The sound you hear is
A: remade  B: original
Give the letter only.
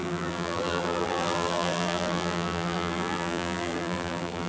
A